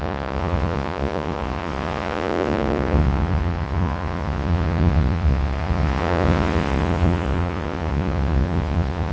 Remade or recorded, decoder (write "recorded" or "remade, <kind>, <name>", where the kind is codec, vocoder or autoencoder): remade, vocoder, Vocos